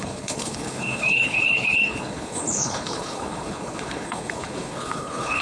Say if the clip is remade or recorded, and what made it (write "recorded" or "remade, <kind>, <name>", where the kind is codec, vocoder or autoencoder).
remade, codec, HILCodec